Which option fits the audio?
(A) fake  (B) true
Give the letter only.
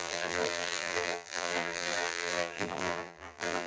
A